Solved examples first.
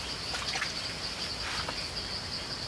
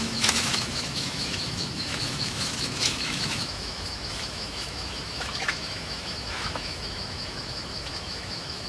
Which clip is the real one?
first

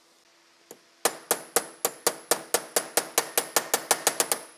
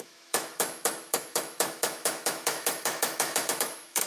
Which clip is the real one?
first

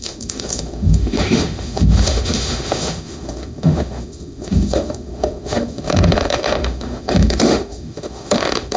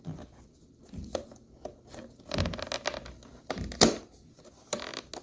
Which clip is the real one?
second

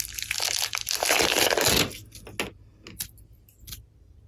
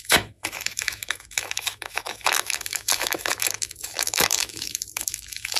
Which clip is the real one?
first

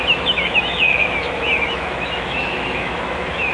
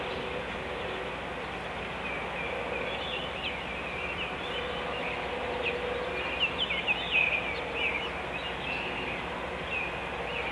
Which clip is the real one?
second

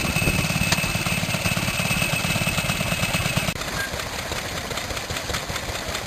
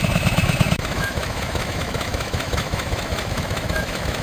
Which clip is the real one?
first